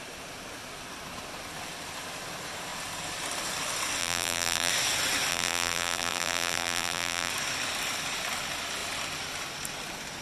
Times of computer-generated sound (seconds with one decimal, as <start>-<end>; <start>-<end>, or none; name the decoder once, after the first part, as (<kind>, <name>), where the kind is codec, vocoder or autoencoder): 4.0-4.7 (vocoder, BigVGAN v2); 5.3-7.3